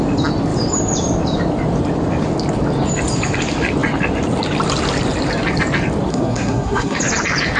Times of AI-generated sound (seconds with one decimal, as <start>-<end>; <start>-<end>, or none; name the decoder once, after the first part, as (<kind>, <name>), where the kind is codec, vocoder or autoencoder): 6.1-7.0 (codec, SNAC)